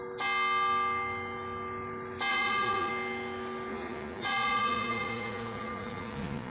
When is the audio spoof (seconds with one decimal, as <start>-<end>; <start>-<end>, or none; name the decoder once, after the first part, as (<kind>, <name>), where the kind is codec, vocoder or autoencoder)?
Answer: 2.3-2.9 (vocoder, Vocos); 3.7-6.5